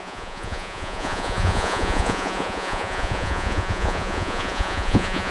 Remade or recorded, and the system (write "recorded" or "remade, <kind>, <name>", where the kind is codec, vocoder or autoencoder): remade, vocoder, Vocos